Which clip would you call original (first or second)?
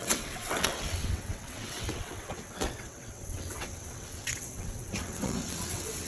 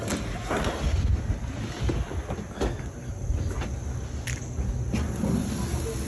second